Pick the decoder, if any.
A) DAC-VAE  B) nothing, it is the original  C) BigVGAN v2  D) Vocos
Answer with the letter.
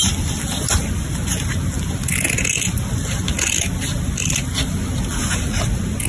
B